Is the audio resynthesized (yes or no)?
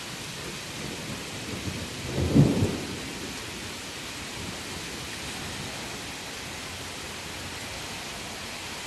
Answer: no